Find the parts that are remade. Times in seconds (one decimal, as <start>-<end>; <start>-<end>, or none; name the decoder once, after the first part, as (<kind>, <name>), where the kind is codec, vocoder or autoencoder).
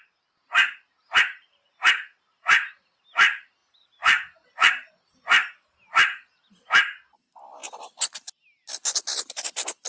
1.4-3.0 (vocoder, BigVGAN v2); 3.6-4.9